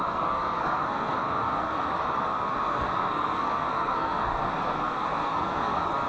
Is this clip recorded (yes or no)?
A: no